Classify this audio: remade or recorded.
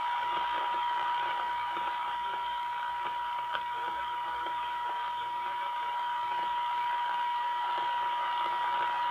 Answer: remade